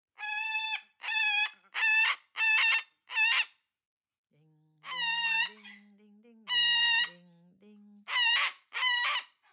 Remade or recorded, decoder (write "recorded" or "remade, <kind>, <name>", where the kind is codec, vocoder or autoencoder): recorded